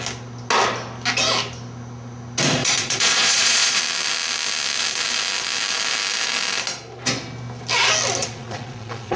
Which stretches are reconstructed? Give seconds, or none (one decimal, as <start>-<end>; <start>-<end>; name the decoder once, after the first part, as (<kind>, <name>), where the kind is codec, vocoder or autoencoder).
2.6-3.8 (vocoder, Vocos); 8.2-9.2